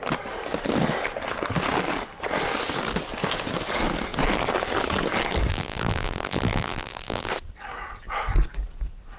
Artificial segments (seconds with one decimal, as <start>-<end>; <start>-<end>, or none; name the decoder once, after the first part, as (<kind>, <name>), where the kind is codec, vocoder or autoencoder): 5.5-7.3 (vocoder, BigVGAN v2)